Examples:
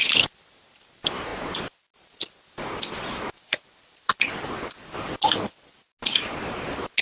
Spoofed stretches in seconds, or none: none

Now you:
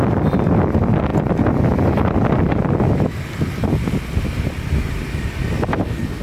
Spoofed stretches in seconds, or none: none